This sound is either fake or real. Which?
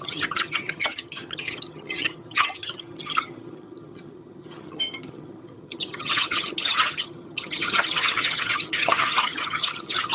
fake